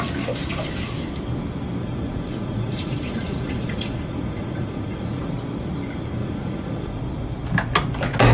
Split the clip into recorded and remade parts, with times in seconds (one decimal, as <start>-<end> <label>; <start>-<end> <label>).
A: 0.0-1.8 recorded; 1.8-5.3 remade; 5.3-6.2 recorded; 6.2-7.0 remade; 7.0-8.3 recorded